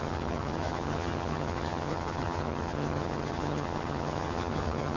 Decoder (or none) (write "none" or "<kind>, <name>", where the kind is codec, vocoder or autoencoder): vocoder, HiFi-GAN